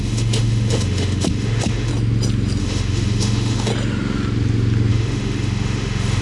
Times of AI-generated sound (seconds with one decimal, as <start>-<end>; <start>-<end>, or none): 0.0-1.9; 2.6-3.7; 4.9-6.2